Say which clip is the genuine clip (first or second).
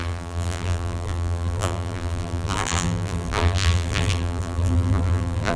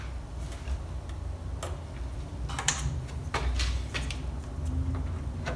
second